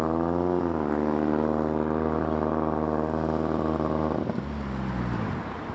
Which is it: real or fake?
real